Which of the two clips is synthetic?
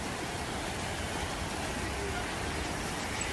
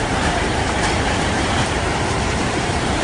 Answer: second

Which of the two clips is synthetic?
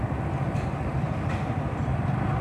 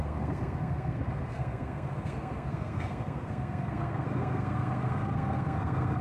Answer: second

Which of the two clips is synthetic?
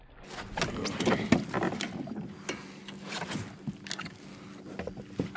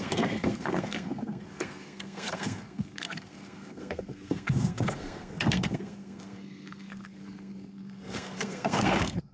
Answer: second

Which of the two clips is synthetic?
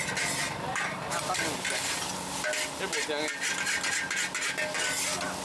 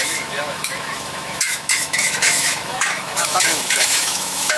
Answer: second